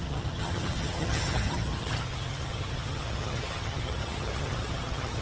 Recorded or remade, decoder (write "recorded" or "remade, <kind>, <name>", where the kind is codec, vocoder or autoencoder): remade, vocoder, HiFi-GAN